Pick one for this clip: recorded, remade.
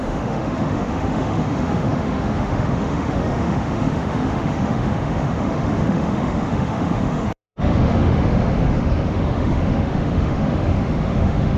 remade